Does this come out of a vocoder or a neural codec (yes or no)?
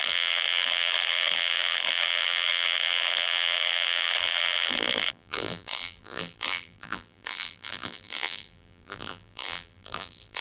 yes